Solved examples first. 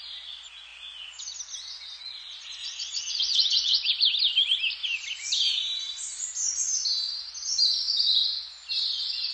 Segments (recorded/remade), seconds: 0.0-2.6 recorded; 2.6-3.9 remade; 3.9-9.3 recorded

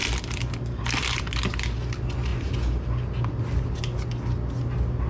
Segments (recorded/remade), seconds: 0.0-5.1 recorded

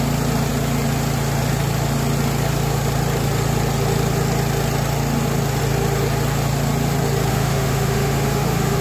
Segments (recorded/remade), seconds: 0.0-7.3 recorded; 7.3-8.8 remade

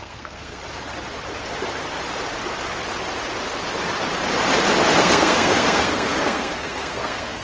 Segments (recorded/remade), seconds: 0.0-0.6 remade; 0.6-5.0 recorded; 5.0-7.4 remade

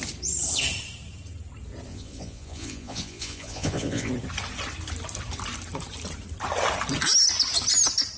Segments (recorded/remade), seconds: 0.0-1.9 recorded; 1.9-4.1 remade; 4.1-8.2 recorded

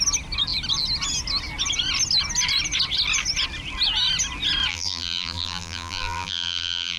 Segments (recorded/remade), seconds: 0.0-4.7 recorded; 4.7-7.0 remade

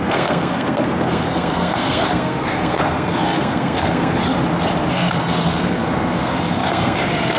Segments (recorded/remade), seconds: 0.0-4.2 remade; 4.2-4.9 recorded; 4.9-7.4 remade